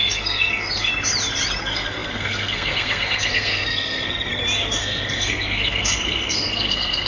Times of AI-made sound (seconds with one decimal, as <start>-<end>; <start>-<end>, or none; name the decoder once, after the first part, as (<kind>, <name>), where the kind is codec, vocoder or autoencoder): 0.0-0.9 (codec, SNAC); 1.6-4.3; 4.8-7.1